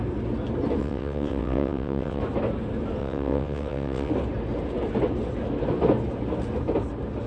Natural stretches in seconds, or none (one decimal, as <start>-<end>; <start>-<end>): 0.0-0.8; 2.2-3.0; 4.1-7.3

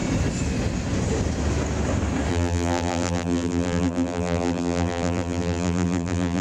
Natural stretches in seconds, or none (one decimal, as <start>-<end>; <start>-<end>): 0.0-2.3

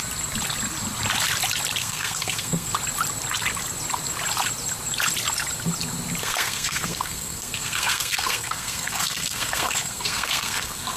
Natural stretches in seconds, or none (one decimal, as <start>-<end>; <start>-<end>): 0.0-1.8; 2.7-6.2

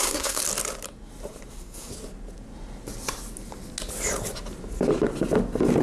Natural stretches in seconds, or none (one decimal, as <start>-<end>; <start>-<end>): 0.4-1.5; 1.9-5.8

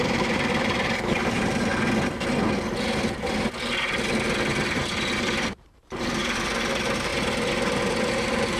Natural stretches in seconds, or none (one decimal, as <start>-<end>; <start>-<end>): 1.7-5.2; 7.1-8.0

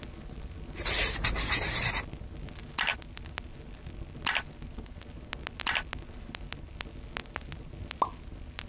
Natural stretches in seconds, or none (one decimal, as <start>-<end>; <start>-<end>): 0.0-8.7